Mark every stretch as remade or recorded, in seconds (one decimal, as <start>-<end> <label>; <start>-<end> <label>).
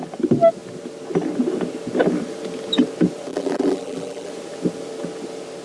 0.0-3.3 recorded; 3.3-4.3 remade; 4.3-5.6 recorded